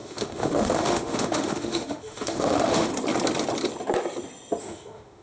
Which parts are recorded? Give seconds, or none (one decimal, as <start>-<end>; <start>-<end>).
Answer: 2.9-4.6